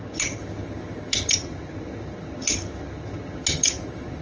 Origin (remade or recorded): remade